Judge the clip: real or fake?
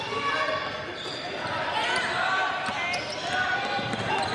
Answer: real